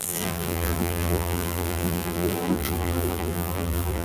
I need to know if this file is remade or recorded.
remade